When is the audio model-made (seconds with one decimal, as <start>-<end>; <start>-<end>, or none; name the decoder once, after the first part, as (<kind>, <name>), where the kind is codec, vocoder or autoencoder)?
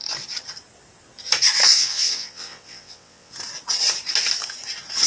1.7-3.3 (vocoder, WaveNeXt)